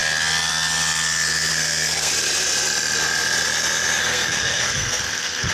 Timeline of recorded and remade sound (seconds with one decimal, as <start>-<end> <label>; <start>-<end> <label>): 0.0-1.5 recorded; 1.5-2.1 remade; 2.1-4.0 recorded; 4.0-5.5 remade